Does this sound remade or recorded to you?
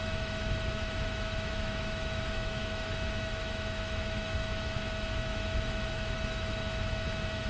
remade